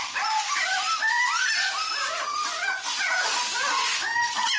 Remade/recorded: recorded